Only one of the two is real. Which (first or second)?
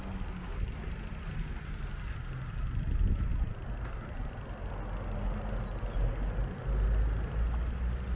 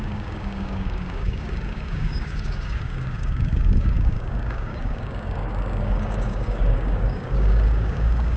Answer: first